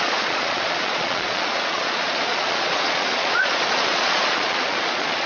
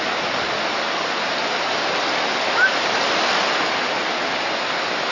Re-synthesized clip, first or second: first